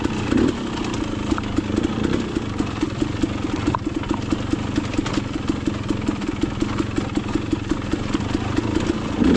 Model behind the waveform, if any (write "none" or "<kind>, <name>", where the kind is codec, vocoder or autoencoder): none